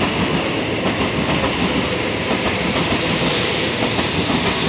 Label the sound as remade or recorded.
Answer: recorded